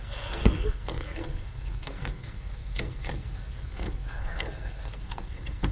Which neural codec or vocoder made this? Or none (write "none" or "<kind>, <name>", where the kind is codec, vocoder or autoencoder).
codec, SNAC